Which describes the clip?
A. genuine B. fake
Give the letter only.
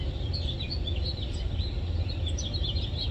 A